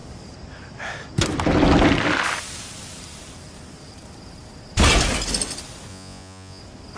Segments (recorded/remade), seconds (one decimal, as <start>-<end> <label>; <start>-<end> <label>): 0.0-5.9 recorded; 5.9-6.6 remade; 6.6-7.0 recorded

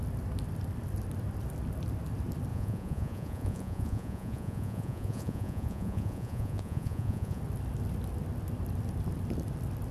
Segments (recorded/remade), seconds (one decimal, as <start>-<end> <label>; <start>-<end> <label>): 0.0-2.5 recorded; 2.5-7.4 remade; 7.4-9.9 recorded

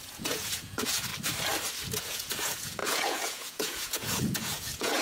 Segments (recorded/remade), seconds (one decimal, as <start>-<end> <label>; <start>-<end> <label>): 0.0-1.1 remade; 1.1-2.0 recorded; 2.0-5.0 remade

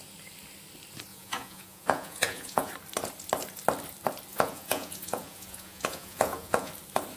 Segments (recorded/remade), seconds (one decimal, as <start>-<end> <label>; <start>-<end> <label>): 0.0-1.1 recorded; 1.1-2.7 remade; 2.7-4.3 recorded; 4.3-6.7 remade; 6.7-7.2 recorded

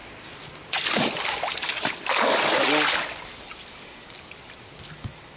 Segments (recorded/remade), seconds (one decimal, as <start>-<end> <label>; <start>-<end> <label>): 0.0-5.4 recorded